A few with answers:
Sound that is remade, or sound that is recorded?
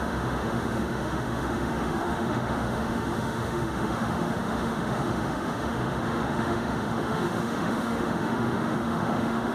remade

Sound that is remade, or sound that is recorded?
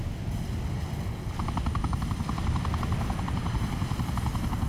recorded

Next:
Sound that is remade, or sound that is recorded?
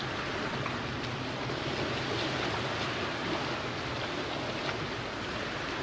recorded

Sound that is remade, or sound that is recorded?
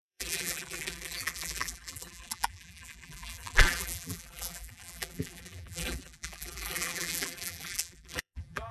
remade